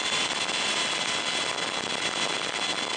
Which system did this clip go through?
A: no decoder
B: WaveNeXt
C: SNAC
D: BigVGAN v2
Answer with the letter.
A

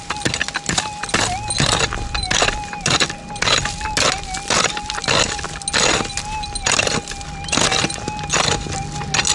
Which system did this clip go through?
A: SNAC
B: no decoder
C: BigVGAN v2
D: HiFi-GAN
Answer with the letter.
B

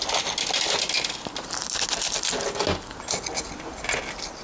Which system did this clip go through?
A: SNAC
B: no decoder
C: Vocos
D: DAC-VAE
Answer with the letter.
B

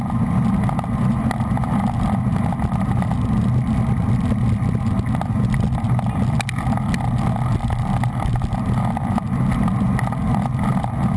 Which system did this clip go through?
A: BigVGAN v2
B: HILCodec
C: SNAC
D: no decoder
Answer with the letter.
D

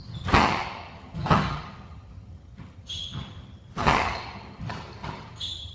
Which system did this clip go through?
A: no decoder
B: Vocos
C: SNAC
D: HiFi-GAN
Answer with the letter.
D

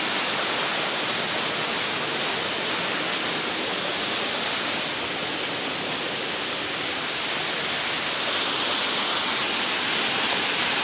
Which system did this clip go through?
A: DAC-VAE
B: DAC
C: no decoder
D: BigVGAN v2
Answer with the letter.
C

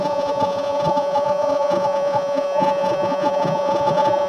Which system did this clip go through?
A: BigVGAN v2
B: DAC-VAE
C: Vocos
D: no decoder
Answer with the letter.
C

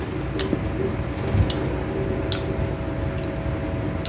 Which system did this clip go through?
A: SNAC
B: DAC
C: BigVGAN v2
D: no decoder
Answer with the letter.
D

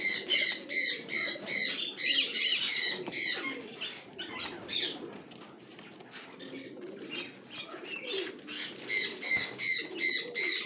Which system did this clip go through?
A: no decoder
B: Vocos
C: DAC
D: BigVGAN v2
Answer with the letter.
A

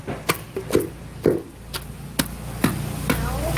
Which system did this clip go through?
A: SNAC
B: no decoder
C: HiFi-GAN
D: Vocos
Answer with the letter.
B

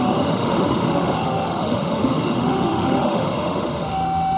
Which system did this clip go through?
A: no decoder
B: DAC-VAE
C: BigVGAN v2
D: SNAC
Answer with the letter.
B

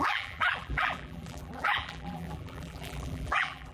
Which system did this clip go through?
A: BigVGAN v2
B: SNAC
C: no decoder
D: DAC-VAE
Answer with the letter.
A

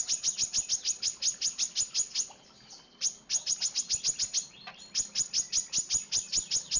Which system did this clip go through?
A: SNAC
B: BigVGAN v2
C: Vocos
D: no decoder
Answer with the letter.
D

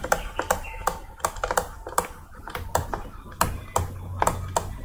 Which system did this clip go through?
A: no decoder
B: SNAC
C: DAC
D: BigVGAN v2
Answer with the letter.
A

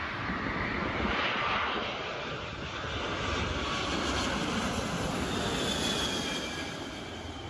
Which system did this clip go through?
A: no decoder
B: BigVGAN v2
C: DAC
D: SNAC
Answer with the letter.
A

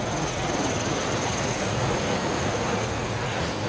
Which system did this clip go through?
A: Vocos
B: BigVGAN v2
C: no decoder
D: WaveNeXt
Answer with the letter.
A